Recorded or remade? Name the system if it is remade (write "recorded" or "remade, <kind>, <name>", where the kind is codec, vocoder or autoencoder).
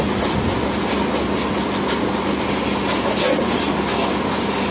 recorded